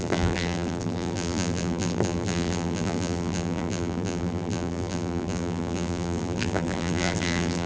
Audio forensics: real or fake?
fake